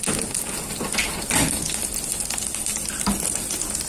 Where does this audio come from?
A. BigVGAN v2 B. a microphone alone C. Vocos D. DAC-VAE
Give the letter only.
B